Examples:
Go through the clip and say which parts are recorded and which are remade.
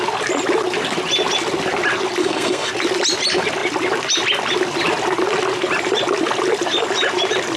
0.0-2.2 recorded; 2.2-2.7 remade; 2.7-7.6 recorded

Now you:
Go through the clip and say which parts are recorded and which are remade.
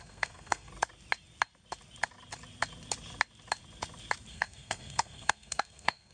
0.0-0.7 remade; 0.7-4.3 recorded; 4.3-6.1 remade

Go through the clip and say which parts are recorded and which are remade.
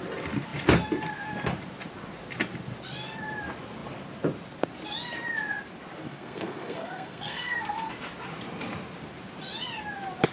0.0-6.0 recorded; 6.0-7.9 remade; 7.9-10.3 recorded